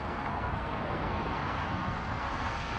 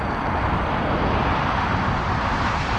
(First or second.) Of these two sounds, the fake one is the first